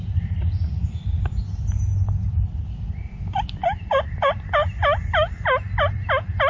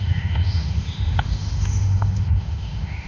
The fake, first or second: second